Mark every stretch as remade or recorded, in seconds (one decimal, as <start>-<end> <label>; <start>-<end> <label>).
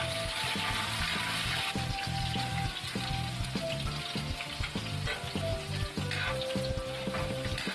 0.0-7.7 recorded